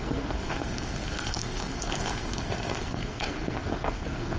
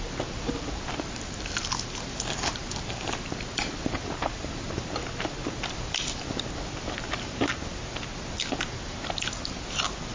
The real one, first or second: second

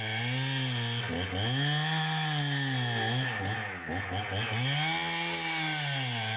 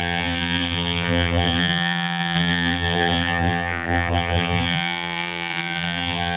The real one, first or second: first